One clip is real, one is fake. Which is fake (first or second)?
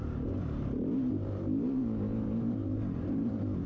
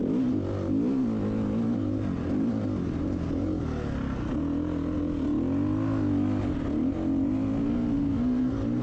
first